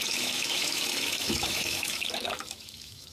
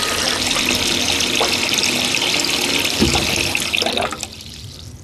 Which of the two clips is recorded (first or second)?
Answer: second